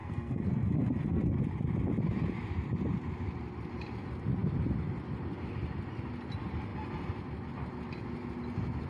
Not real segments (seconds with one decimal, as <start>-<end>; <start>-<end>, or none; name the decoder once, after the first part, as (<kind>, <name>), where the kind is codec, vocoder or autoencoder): 0.0-1.4 (codec, SNAC)